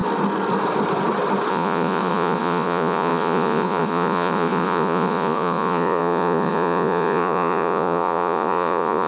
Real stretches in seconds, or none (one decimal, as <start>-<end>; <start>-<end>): 0.0-1.5